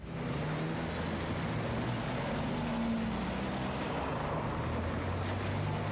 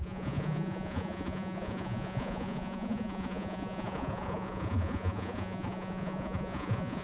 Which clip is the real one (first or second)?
first